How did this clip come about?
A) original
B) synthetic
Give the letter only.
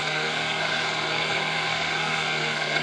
B